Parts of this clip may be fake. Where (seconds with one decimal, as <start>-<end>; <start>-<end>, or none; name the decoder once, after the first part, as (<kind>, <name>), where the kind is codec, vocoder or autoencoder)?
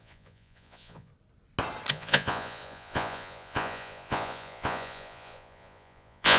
0.0-1.1 (vocoder, Vocos); 1.9-6.4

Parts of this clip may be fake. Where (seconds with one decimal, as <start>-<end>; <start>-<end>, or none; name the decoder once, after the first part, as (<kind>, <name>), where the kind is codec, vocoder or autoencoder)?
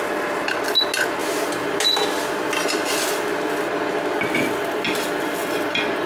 none